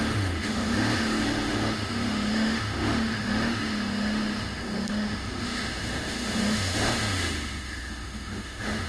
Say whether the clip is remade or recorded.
remade